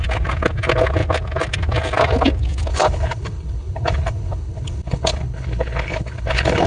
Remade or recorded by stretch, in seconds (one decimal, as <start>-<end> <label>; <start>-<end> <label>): 0.0-2.7 recorded; 2.7-6.7 remade